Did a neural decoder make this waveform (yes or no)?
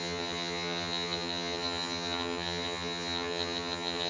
yes